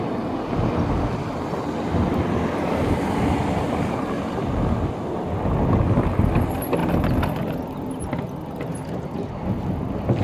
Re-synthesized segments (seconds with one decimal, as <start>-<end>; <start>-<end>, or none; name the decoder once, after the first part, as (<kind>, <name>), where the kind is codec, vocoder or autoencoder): none